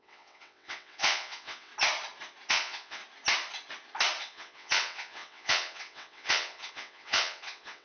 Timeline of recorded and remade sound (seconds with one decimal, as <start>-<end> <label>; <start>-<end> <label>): 0.0-1.7 remade; 1.7-2.5 recorded; 2.5-3.0 remade; 3.0-4.2 recorded; 4.2-7.8 remade